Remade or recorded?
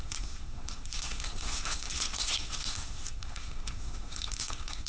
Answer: remade